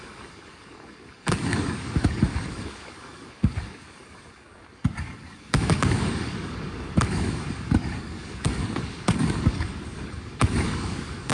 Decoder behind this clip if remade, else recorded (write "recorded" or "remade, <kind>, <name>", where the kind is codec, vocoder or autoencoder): remade, codec, DAC